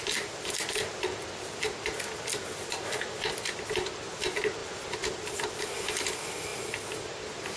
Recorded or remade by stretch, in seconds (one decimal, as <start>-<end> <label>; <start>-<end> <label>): 0.0-1.9 recorded; 1.9-2.5 remade; 2.5-4.6 recorded; 4.6-5.6 remade; 5.6-7.6 recorded